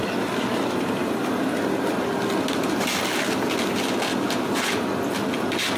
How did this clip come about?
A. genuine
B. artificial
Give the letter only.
A